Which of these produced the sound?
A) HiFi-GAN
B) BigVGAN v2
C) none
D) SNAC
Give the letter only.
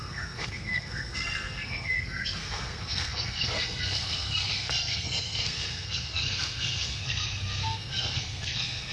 D